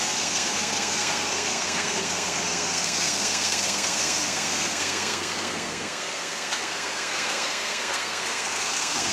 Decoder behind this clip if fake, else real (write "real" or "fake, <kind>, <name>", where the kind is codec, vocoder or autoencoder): fake, codec, SNAC